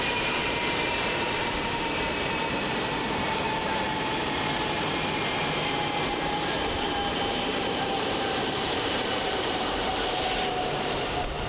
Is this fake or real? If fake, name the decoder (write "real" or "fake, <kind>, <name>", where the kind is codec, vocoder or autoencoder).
fake, vocoder, BigVGAN v2